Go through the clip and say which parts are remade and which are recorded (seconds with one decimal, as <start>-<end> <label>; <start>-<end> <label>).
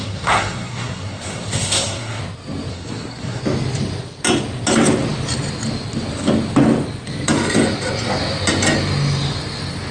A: 0.0-2.2 remade; 2.2-2.7 recorded; 2.7-3.4 remade; 3.4-9.9 recorded